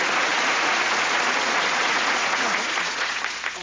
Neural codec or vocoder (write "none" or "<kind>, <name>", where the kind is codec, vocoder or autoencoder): vocoder, Vocos